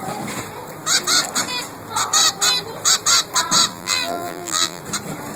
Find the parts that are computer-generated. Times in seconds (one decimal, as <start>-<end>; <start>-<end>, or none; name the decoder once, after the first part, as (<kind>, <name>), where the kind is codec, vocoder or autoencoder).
3.7-4.8 (vocoder, BigVGAN v2)